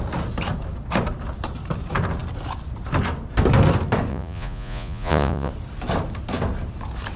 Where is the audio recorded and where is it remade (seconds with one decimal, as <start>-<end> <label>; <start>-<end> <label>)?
0.0-4.1 recorded; 4.1-5.5 remade; 5.5-7.2 recorded